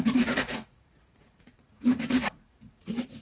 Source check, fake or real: fake